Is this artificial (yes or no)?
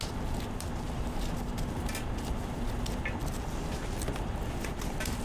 no